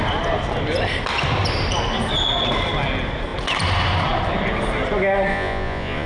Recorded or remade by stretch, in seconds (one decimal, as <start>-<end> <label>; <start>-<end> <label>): 0.0-5.3 recorded; 5.3-6.1 remade

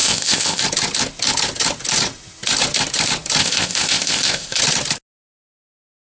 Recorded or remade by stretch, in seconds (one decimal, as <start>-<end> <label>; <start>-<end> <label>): 0.0-0.6 remade; 0.6-3.4 recorded; 3.4-4.6 remade; 4.6-6.1 recorded

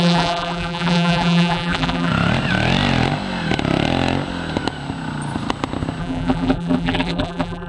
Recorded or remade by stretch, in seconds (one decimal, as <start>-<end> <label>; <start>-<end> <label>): 0.0-2.1 remade; 2.1-6.0 recorded; 6.0-7.7 remade

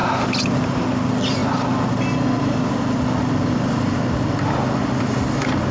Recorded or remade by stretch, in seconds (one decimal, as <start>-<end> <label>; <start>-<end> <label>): 0.0-5.7 recorded